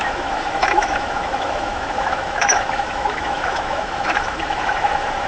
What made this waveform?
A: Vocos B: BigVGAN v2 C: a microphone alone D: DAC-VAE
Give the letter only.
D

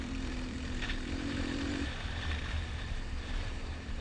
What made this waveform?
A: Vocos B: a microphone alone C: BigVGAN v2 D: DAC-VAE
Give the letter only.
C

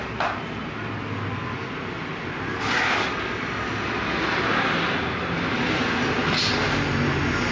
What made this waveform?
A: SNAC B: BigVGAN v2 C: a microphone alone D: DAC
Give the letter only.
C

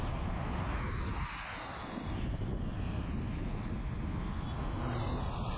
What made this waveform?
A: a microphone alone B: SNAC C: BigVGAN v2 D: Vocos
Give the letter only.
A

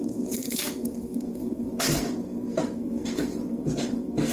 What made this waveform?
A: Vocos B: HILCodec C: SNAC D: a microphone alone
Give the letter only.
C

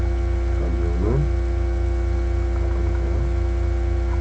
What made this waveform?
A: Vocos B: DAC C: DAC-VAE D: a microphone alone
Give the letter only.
D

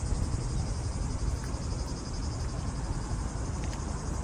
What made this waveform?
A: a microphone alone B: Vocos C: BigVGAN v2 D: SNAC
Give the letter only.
A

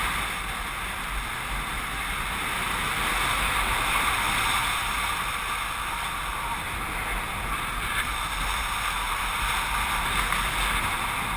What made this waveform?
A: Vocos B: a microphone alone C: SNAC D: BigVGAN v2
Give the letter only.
B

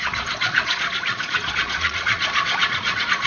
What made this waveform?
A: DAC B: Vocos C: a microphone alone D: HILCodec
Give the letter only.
B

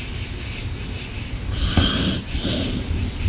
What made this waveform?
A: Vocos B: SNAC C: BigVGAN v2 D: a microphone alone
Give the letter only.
D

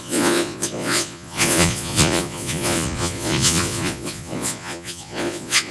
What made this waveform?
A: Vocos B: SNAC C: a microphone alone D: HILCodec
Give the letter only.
A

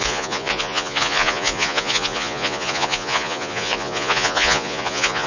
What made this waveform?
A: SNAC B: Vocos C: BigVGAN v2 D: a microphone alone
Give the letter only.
B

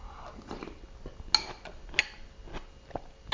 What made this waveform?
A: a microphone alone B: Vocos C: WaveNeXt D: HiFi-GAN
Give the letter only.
A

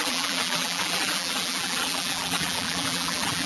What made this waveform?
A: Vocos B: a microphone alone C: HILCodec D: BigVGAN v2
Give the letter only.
D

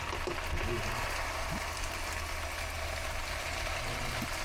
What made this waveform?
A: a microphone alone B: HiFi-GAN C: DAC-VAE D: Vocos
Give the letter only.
A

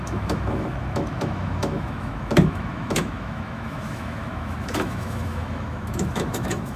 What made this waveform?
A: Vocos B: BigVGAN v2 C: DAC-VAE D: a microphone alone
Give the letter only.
C